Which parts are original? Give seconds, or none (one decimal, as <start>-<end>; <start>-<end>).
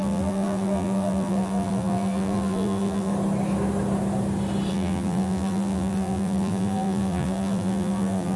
3.1-4.7